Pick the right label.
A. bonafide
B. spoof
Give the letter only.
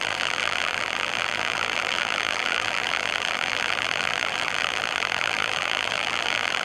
B